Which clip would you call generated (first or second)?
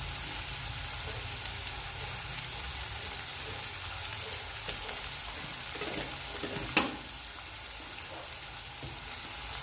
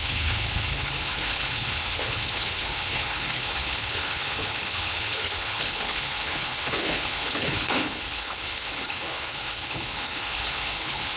second